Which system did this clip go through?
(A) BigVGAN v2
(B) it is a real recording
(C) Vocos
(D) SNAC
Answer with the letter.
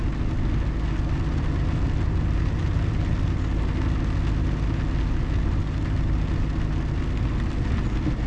B